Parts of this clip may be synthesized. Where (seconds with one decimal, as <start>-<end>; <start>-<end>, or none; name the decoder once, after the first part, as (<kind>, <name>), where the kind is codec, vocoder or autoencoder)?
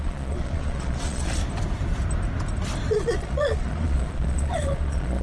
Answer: 0.0-1.4 (vocoder, Vocos); 2.9-5.2